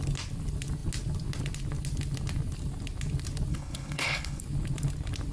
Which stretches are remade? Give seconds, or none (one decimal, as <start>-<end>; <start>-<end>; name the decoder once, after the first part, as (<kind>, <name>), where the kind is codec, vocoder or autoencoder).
3.5-4.4 (codec, HILCodec)